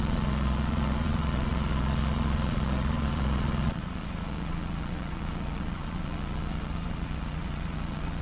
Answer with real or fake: fake